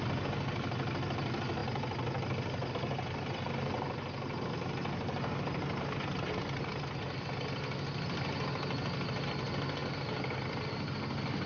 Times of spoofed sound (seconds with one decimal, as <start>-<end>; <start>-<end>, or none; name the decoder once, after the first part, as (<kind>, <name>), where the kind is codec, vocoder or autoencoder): none